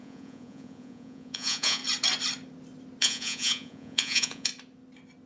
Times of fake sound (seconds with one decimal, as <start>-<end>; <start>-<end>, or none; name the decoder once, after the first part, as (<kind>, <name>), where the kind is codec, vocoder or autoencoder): 0.0-1.8 (vocoder, Vocos); 3.0-4.5